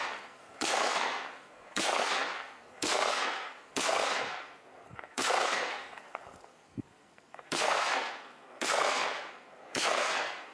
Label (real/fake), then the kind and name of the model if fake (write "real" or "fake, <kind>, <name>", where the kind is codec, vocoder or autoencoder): fake, codec, SNAC